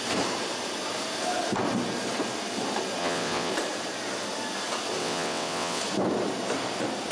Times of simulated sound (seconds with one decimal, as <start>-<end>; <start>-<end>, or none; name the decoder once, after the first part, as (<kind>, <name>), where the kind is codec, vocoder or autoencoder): 3.0-3.5 (vocoder, WaveNeXt); 5.0-5.8